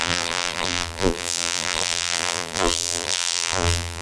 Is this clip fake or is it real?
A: fake